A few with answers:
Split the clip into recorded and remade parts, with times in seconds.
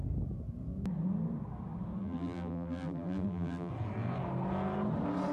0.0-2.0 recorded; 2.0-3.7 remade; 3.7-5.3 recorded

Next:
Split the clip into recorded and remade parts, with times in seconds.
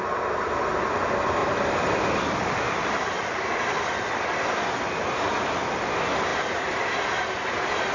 0.0-1.4 recorded; 1.4-4.6 remade; 4.6-6.3 recorded; 6.3-7.9 remade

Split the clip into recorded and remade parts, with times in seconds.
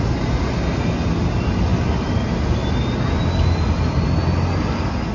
0.0-5.1 recorded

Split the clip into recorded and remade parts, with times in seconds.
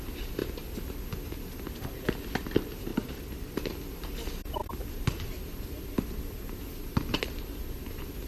0.0-2.9 recorded; 2.9-3.6 remade; 3.6-8.3 recorded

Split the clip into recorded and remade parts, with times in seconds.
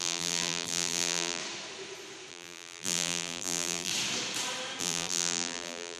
0.0-1.4 remade; 1.4-2.3 recorded; 2.3-3.9 remade; 3.9-4.8 recorded; 4.8-6.0 remade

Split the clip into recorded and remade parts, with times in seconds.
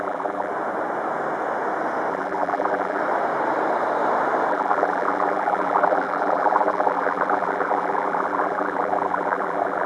0.0-0.5 remade; 0.5-2.1 recorded; 2.1-3.0 remade; 3.0-4.5 recorded; 4.5-9.9 remade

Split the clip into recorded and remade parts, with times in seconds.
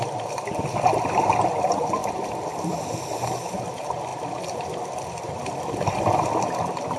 0.0-2.0 recorded; 2.0-2.8 remade; 2.8-7.0 recorded